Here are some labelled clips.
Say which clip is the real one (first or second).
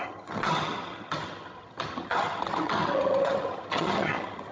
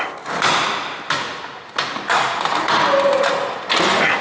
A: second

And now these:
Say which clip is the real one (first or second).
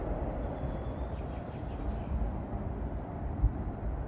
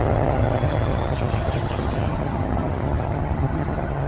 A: first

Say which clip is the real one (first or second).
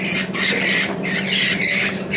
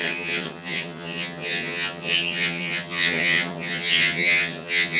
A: first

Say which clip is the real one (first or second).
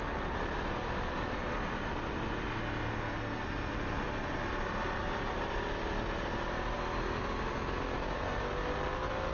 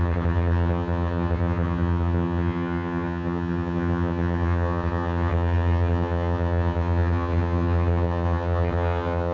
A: first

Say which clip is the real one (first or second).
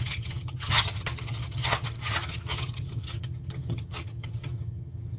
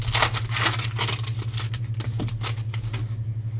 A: second